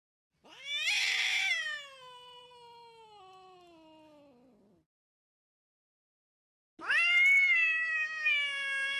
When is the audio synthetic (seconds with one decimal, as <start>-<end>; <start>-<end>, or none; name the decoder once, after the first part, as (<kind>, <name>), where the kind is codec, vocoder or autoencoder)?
none